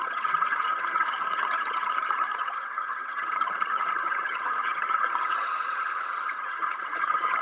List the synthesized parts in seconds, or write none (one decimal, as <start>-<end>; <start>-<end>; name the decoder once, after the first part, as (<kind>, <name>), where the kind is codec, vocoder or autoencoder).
0.0-7.4 (vocoder, HiFi-GAN)